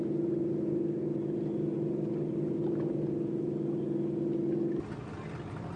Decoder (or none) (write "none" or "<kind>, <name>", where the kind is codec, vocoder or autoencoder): none